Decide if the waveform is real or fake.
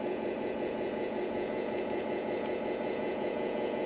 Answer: fake